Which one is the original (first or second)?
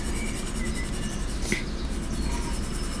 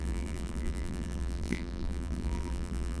first